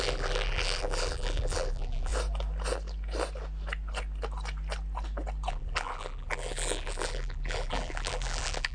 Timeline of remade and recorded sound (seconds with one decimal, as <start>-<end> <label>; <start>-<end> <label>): 0.0-2.1 remade; 2.1-5.5 recorded; 5.5-8.7 remade